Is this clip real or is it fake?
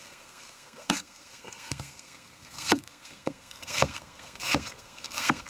fake